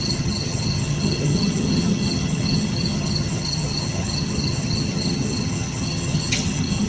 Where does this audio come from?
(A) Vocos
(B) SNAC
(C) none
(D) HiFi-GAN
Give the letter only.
D